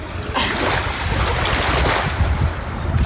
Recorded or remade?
recorded